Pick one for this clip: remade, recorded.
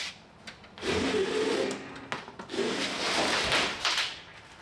recorded